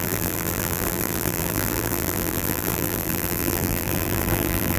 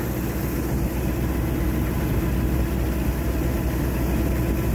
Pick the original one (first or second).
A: second